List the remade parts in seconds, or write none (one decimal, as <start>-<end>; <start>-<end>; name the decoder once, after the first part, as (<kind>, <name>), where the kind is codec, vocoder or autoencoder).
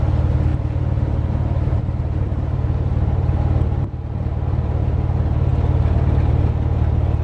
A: 0.5-4.8 (vocoder, BigVGAN v2); 5.5-6.3